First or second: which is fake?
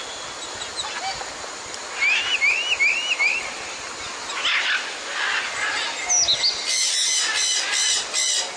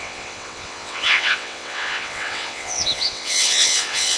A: second